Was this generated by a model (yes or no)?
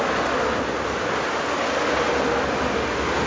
no